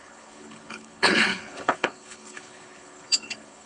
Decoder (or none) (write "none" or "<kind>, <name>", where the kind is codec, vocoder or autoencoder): codec, HILCodec